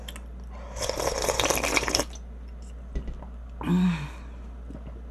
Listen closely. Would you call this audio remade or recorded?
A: recorded